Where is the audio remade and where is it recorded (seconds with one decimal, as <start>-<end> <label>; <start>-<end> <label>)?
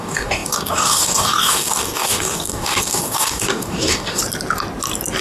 0.0-4.2 remade; 4.2-5.2 recorded